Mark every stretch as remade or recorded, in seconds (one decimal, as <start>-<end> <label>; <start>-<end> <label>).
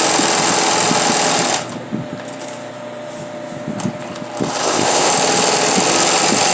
0.0-4.6 recorded; 4.6-5.1 remade; 5.1-6.5 recorded